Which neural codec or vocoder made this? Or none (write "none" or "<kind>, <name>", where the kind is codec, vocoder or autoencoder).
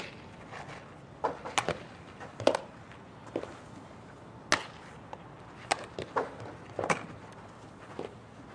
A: none